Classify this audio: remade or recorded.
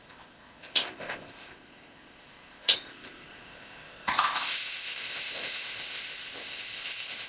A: remade